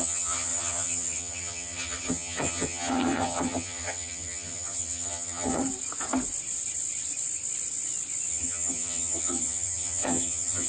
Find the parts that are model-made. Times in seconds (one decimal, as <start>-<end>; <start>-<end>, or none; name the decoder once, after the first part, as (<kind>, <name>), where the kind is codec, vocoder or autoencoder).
0.0-5.6 (vocoder, HiFi-GAN); 8.3-10.7